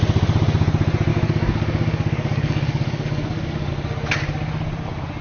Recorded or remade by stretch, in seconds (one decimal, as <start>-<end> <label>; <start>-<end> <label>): 0.0-1.1 recorded; 1.1-3.7 remade; 3.7-5.2 recorded